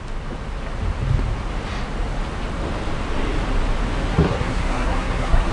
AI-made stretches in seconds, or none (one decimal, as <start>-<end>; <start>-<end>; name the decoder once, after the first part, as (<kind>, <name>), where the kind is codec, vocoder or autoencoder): 4.1-5.5 (codec, SNAC)